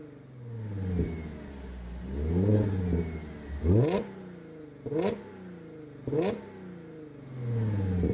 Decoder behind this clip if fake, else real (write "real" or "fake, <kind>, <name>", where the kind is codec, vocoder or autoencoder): real